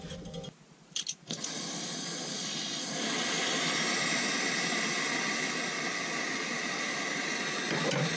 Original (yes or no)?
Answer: yes